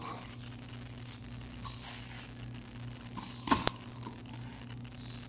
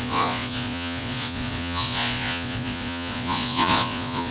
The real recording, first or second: first